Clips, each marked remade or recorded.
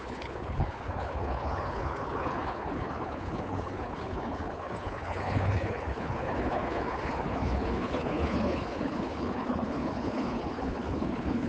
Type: remade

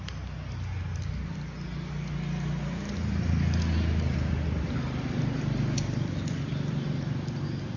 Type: recorded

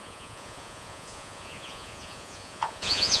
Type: remade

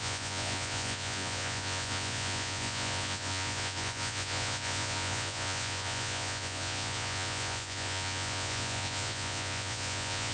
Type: remade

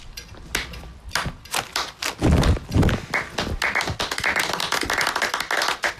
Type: recorded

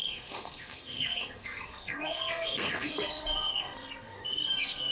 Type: remade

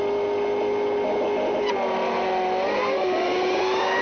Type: recorded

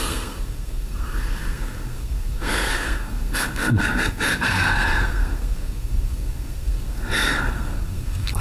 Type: remade